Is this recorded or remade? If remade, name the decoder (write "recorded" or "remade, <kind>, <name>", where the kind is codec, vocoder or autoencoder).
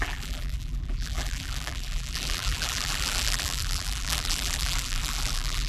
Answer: remade, vocoder, BigVGAN v2